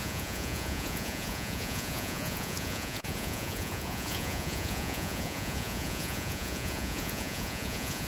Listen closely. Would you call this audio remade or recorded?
remade